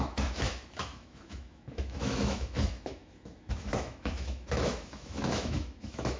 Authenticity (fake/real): fake